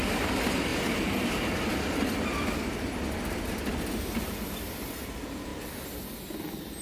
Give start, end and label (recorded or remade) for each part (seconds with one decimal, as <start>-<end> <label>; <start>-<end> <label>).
0.0-6.8 recorded